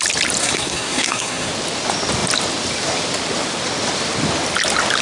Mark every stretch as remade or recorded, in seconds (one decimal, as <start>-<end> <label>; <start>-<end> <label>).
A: 0.0-0.4 recorded; 0.4-1.5 remade; 1.5-5.0 recorded